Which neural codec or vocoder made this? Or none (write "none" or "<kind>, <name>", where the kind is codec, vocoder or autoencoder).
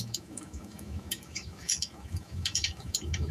autoencoder, DAC-VAE